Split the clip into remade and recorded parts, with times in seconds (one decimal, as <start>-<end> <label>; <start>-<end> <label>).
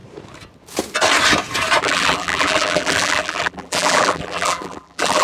0.0-1.8 recorded; 1.8-5.2 remade